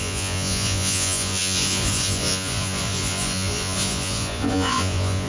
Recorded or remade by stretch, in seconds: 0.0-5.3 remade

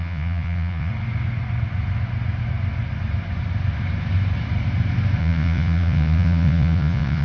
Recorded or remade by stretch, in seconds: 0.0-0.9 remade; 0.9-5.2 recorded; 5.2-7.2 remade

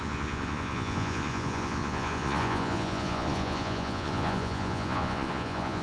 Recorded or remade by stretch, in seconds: 0.0-5.8 remade

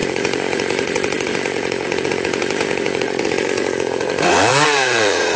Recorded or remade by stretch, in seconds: 0.0-5.4 remade

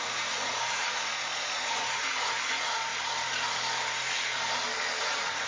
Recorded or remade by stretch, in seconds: 0.0-2.9 remade; 2.9-5.0 recorded; 5.0-5.5 remade

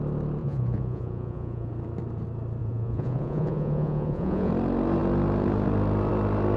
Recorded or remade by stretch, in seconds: 0.0-0.4 recorded; 0.4-1.7 remade; 1.7-2.6 recorded; 2.6-4.5 remade; 4.5-6.6 recorded

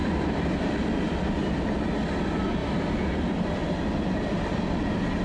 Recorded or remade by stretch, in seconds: 0.0-5.2 recorded

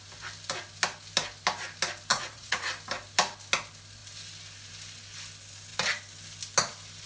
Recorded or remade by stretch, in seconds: 0.0-2.1 recorded; 2.1-2.7 remade; 2.7-7.1 recorded